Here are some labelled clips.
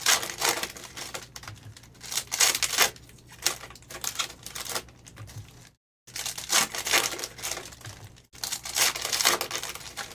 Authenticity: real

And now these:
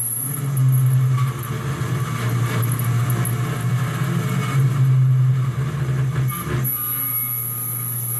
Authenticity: real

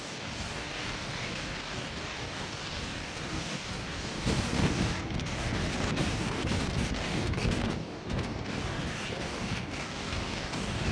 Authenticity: fake